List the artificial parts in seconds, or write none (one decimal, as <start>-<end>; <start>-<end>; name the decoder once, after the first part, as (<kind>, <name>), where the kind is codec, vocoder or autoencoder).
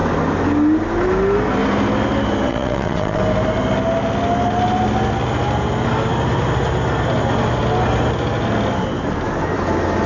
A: 2.5-3.2 (vocoder, WaveNeXt)